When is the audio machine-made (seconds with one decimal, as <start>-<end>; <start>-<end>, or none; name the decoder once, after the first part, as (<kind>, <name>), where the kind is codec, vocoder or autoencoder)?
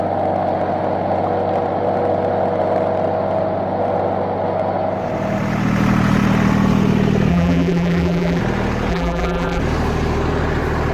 7.3-8.4 (vocoder, BigVGAN v2); 8.9-9.6